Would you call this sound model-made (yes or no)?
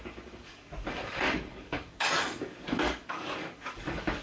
yes